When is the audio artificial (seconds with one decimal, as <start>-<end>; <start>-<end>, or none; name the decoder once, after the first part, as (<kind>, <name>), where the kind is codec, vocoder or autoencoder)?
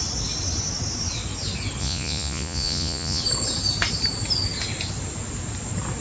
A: 1.8-3.2 (vocoder, Vocos)